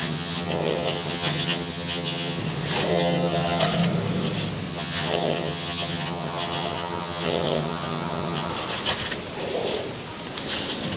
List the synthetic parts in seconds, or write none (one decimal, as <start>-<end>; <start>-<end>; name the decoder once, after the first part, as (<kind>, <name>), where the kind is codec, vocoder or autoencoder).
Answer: 0.0-2.4 (vocoder, HiFi-GAN); 2.9-3.6; 4.7-8.5